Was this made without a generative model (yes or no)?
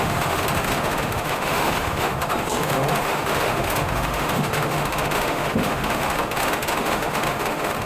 no